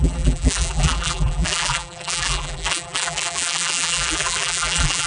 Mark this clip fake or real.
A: fake